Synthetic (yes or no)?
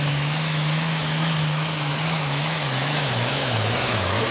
yes